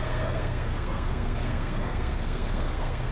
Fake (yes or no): yes